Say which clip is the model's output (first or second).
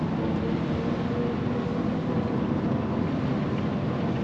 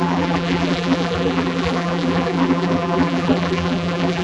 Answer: second